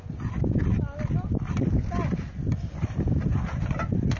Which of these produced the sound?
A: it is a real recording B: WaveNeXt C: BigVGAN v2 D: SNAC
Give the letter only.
A